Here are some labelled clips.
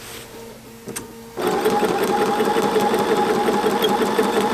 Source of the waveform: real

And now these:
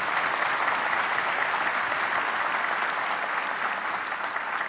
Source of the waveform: real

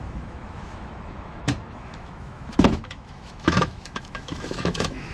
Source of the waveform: fake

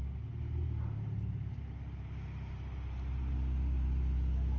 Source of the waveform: real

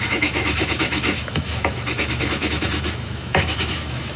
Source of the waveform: fake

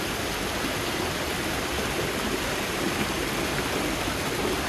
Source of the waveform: real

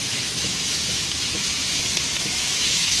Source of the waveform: fake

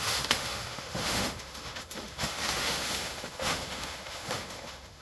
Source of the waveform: fake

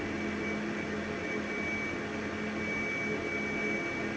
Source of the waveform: real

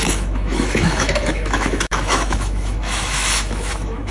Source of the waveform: fake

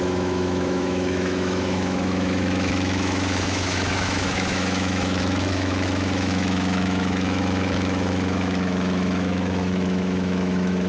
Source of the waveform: fake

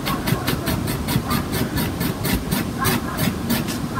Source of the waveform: real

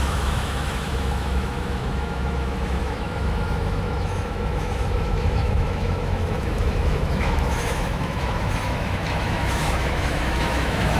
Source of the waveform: fake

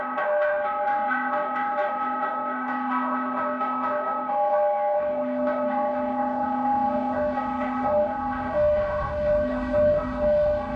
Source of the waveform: fake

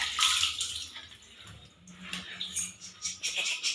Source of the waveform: real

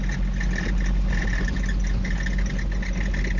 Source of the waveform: real